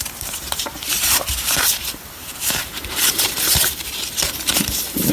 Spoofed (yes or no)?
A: yes